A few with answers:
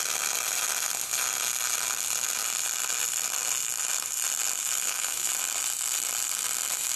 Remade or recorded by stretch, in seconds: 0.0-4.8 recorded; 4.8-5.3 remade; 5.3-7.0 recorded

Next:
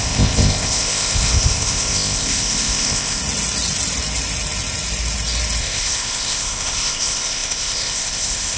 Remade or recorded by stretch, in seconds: 0.0-3.2 remade; 3.2-5.6 recorded; 5.6-8.6 remade